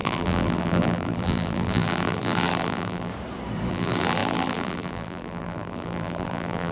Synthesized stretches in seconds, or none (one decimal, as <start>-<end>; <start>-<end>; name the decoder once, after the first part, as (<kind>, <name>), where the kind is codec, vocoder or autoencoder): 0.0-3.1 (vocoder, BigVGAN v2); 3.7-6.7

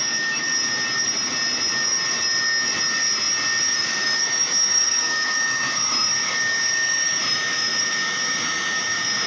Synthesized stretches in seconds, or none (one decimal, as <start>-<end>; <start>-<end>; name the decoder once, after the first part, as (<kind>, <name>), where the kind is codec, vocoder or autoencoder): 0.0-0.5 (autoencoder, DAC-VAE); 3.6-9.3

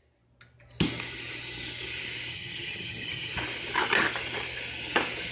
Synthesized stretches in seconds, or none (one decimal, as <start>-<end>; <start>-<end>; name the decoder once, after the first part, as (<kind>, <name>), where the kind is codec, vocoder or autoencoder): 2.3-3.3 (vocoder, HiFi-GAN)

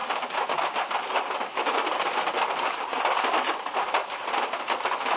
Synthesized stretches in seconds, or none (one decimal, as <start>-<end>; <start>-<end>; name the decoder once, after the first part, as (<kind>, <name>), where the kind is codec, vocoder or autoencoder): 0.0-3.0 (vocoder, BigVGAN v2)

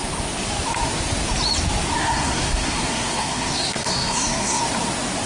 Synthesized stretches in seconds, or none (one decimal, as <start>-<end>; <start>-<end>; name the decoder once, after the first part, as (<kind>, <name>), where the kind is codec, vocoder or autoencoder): 2.0-4.6 (codec, SNAC)

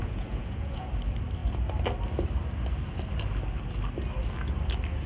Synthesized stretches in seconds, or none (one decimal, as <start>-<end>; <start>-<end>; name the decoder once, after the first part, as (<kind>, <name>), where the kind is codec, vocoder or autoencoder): 0.0-0.9 (vocoder, Vocos)

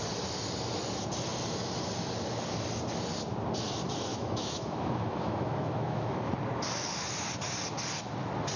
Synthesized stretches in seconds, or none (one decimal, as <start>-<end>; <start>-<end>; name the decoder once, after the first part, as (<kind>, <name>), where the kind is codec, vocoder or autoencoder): 4.1-6.3 (autoencoder, DAC-VAE)

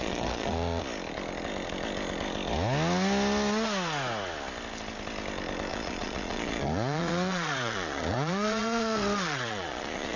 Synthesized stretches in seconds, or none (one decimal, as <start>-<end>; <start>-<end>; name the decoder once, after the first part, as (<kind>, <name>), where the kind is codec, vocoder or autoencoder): 0.0-0.8 (vocoder, Vocos); 5.7-10.2